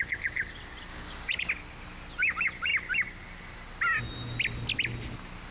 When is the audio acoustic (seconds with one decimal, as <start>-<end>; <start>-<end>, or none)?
0.0-0.9; 1.5-5.5